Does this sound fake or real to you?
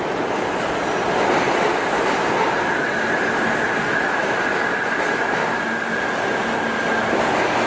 real